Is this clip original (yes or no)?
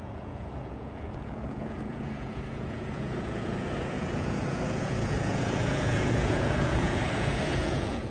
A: no